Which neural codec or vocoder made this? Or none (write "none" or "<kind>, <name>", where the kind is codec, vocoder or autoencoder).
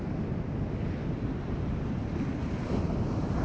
none